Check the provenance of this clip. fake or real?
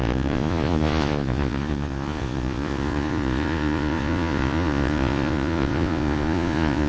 fake